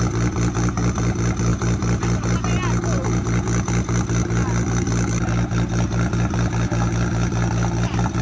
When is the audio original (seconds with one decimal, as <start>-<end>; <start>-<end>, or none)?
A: 0.0-8.2